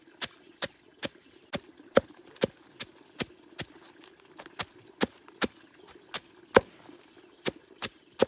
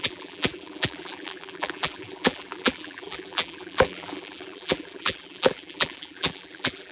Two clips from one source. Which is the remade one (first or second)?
second